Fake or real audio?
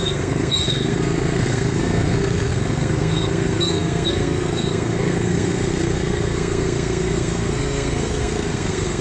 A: fake